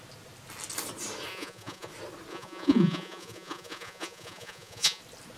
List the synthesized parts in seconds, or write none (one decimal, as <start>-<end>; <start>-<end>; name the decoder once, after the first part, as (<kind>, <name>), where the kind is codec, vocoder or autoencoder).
1.3-1.9 (vocoder, Vocos); 2.3-5.0